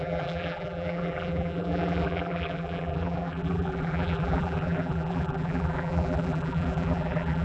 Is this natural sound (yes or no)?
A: no